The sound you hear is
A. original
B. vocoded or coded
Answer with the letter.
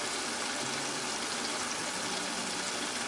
A